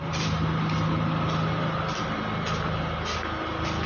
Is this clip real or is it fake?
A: real